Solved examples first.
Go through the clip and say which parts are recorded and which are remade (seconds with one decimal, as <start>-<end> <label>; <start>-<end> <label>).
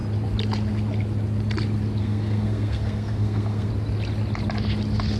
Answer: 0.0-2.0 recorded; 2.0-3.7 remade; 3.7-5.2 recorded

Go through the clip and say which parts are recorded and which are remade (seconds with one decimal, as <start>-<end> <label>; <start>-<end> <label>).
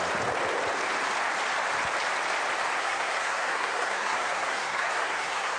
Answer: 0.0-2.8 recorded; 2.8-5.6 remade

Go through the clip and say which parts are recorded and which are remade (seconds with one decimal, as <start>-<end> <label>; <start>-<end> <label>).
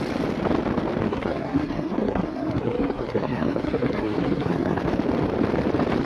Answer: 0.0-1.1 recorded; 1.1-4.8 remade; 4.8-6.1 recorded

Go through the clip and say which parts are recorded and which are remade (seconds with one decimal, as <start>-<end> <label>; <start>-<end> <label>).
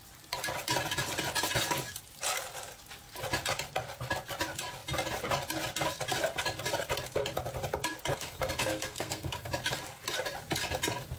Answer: 0.0-8.1 recorded; 8.1-9.5 remade; 9.5-11.2 recorded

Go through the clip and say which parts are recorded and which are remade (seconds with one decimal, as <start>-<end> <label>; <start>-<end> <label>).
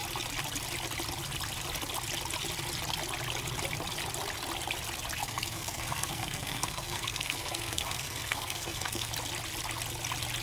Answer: 0.0-5.2 recorded; 5.2-9.1 remade; 9.1-10.4 recorded